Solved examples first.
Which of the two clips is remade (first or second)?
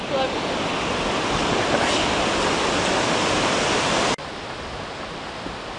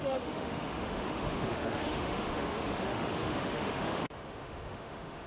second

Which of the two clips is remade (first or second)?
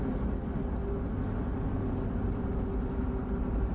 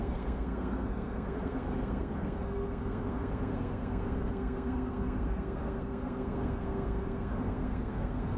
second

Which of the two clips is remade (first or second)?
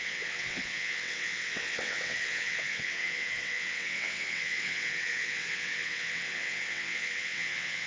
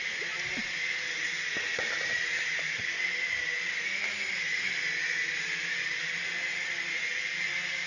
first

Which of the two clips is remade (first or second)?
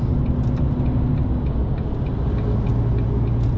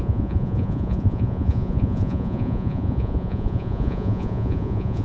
second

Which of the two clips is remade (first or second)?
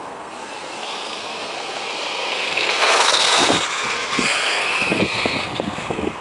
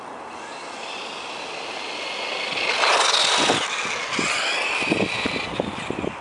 first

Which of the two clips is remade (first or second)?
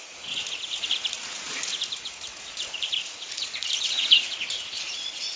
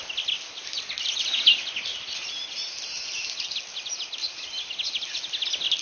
first